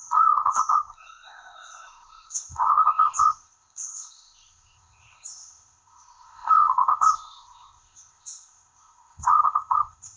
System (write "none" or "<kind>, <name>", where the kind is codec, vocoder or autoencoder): codec, ZipCodec